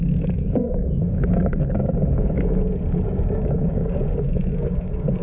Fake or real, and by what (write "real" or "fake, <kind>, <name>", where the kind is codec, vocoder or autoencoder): fake, codec, DAC